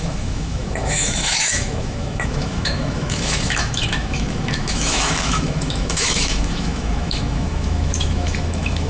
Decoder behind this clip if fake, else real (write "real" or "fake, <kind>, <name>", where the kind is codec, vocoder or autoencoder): fake, autoencoder, DAC-VAE